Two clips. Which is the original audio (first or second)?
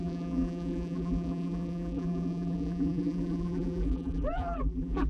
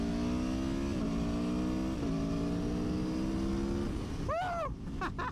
second